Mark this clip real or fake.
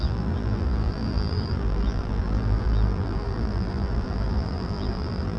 fake